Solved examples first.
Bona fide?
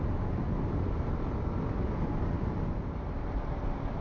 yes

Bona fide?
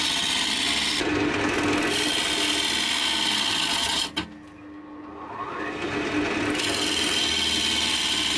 yes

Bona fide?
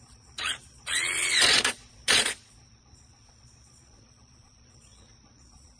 no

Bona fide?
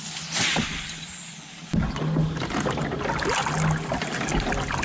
yes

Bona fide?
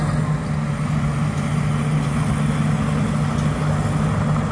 yes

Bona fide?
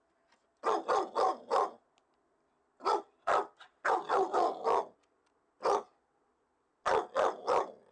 yes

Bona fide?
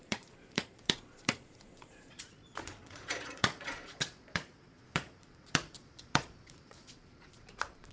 no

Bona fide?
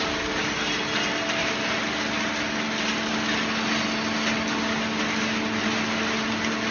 yes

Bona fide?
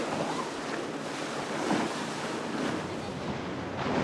yes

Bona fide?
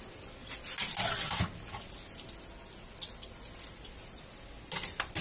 yes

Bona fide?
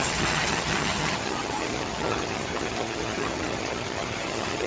no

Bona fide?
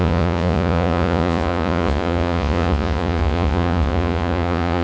no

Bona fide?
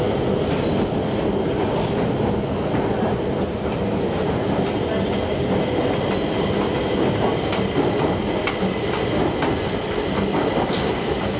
yes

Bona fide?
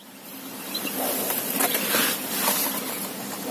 yes